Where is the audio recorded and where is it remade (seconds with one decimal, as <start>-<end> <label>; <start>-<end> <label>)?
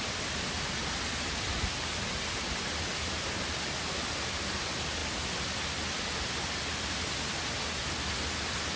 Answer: 0.0-8.8 recorded